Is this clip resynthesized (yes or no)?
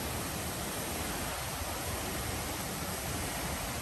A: no